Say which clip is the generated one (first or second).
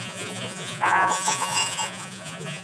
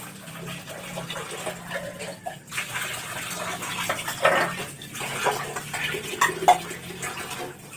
first